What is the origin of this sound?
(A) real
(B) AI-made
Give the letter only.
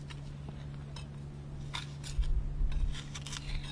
A